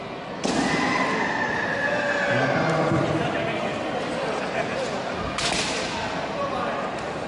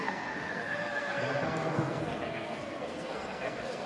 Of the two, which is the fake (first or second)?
second